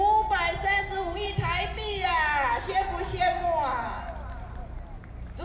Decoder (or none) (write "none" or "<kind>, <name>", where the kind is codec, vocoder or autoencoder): none